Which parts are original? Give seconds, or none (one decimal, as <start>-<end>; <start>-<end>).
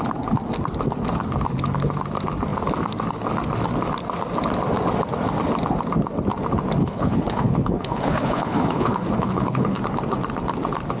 0.0-6.8; 9.8-11.0